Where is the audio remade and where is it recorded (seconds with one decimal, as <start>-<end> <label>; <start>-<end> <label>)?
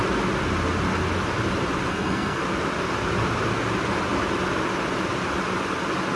0.0-1.9 recorded; 1.9-2.4 remade; 2.4-6.2 recorded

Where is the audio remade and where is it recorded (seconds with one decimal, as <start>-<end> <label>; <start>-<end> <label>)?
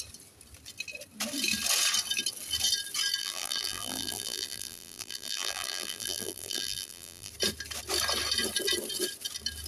0.0-3.2 recorded; 3.2-7.3 remade; 7.3-9.7 recorded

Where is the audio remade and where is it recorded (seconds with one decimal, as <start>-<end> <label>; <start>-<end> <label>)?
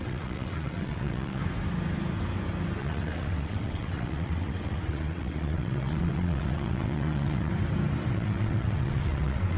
0.0-1.4 remade; 1.4-2.8 recorded; 2.8-7.5 remade; 7.5-8.1 recorded; 8.1-9.6 remade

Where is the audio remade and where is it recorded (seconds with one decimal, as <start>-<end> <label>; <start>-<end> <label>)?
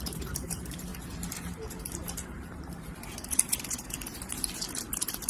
0.0-0.9 remade; 0.9-2.5 recorded; 2.5-5.3 remade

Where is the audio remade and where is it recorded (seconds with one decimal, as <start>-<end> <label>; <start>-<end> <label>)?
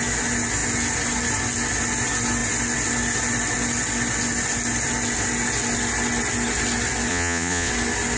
0.0-7.1 recorded; 7.1-7.7 remade; 7.7-8.2 recorded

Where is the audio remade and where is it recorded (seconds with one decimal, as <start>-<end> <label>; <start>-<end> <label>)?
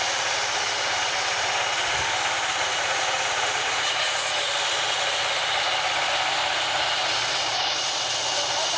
0.0-2.5 recorded; 2.5-4.4 remade; 4.4-8.8 recorded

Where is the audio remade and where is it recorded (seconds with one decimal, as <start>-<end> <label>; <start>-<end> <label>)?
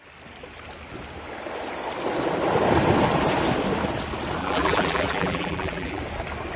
0.0-4.4 recorded; 4.4-6.0 remade; 6.0-6.6 recorded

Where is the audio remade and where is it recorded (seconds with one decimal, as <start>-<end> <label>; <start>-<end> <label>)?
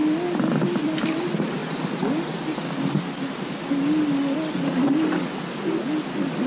0.0-6.5 recorded